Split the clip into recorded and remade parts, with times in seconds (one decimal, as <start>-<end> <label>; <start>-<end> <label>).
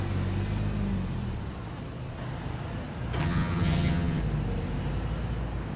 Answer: 0.0-3.2 recorded; 3.2-4.2 remade; 4.2-5.8 recorded